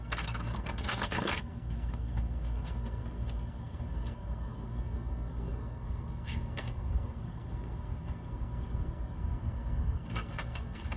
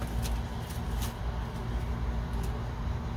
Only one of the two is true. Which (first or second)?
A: second